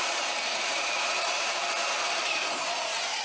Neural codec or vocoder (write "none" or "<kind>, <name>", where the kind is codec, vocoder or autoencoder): vocoder, BigVGAN v2